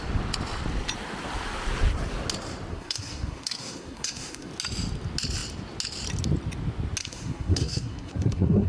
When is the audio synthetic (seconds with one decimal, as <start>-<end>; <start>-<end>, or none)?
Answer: 2.7-4.5; 7.0-8.7